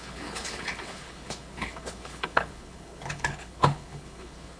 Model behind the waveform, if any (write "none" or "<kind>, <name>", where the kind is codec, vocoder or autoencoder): codec, HILCodec